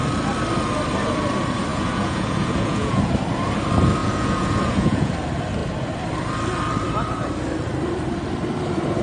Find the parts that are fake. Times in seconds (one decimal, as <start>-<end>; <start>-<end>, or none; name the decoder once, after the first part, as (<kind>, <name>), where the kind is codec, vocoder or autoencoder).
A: 1.7-3.0 (vocoder, Vocos); 4.0-5.1